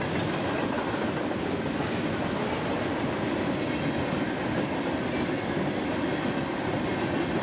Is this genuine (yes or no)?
yes